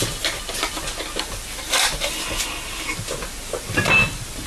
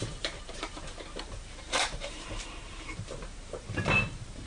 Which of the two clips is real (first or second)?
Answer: first